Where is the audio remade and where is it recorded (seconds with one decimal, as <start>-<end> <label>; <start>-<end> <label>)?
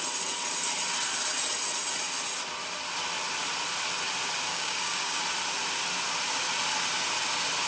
0.0-4.5 recorded; 4.5-5.2 remade; 5.2-7.7 recorded